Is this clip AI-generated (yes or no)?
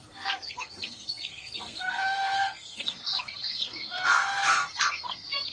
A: yes